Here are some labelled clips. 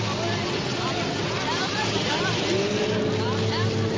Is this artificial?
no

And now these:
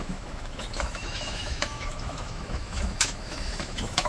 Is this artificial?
yes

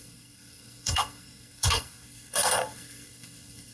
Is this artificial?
yes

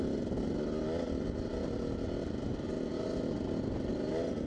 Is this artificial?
no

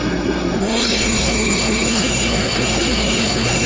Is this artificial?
yes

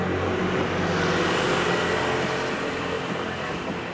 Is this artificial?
no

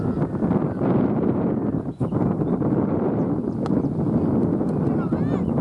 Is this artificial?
no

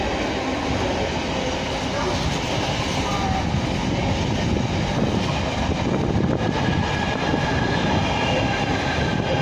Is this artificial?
no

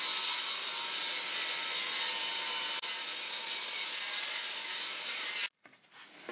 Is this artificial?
no